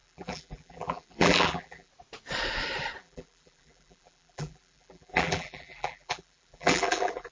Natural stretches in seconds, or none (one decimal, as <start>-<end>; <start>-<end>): 1.9-3.0